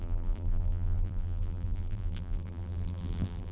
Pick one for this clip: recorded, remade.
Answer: remade